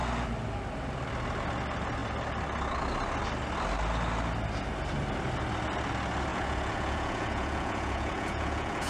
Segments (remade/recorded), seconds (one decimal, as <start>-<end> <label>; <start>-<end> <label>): 0.0-6.3 recorded; 6.3-8.9 remade